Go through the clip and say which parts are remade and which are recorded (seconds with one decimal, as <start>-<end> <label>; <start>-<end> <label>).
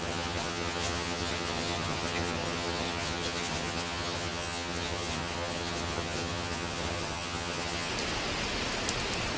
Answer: 0.0-7.9 remade; 7.9-9.4 recorded